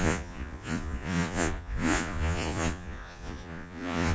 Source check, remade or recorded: remade